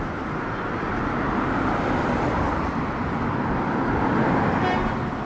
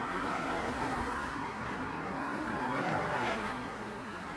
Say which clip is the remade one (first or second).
second